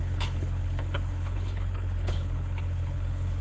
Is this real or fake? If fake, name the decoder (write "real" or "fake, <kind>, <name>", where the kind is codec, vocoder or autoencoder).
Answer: fake, codec, HILCodec